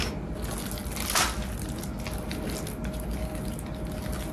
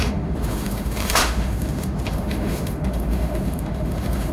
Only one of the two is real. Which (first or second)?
first